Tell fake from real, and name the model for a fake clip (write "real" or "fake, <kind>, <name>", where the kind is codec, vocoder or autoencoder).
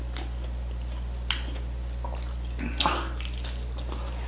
real